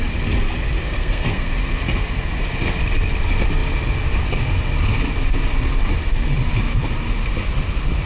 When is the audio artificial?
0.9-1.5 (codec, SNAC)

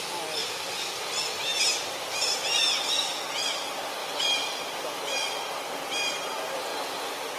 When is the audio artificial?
4.0-5.0 (vocoder, BigVGAN v2); 6.7-7.4

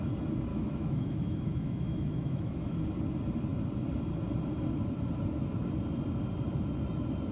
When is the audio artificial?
0.5-3.0 (autoencoder, DAC-VAE)

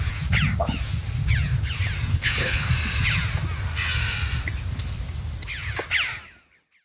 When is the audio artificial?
2.1-2.7 (codec, HILCodec)

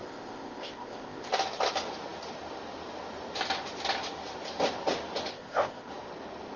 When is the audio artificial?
0.0-1.3 (codec, ZipCodec); 5.3-5.9

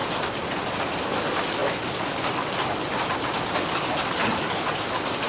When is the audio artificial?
1.6-4.8 (vocoder, BigVGAN v2)